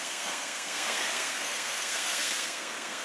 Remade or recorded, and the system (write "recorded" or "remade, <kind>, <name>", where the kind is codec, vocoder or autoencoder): remade, codec, SNAC